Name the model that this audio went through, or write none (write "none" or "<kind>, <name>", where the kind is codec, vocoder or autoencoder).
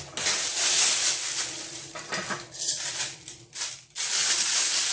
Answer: none